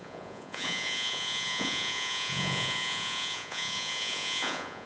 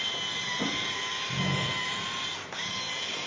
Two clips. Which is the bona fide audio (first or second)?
second